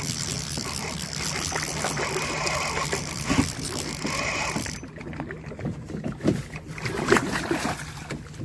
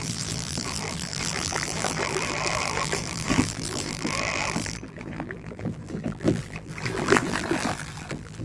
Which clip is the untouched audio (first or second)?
first